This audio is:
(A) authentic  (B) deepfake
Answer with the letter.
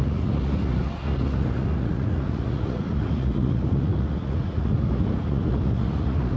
B